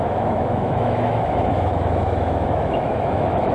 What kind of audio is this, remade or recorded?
remade